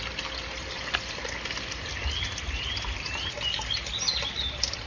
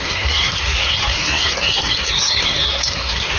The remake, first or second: second